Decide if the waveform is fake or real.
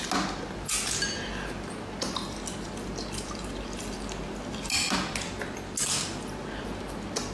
real